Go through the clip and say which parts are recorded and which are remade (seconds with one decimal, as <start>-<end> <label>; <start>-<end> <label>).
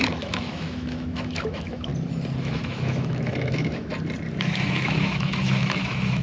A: 0.0-1.9 remade; 1.9-2.4 recorded; 2.4-3.9 remade; 3.9-4.4 recorded; 4.4-6.2 remade